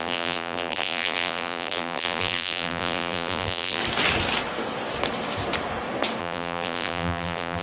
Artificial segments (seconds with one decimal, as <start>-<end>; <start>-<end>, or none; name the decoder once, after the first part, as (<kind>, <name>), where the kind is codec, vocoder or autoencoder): 0.0-3.8 (vocoder, BigVGAN v2); 6.2-7.6